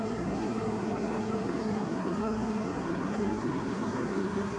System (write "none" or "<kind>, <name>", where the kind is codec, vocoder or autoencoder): codec, SNAC